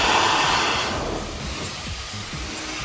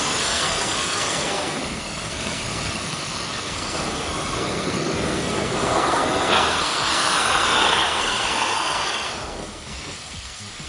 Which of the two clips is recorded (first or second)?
first